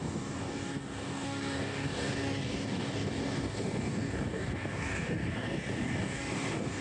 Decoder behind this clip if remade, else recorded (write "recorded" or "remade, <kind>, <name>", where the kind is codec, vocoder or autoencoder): remade, codec, DAC